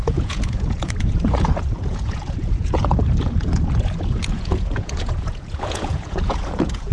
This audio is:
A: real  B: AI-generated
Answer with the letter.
B